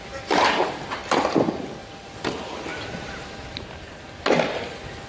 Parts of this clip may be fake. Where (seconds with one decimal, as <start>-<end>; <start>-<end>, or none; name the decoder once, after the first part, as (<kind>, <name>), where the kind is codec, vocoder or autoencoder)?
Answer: none